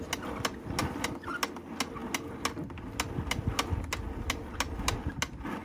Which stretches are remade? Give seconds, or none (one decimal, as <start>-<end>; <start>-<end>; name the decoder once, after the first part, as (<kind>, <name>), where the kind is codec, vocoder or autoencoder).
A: none